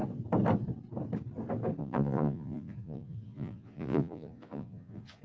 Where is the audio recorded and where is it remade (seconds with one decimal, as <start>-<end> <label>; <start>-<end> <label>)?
0.0-1.8 recorded; 1.8-5.2 remade